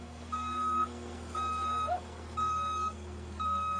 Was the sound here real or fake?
fake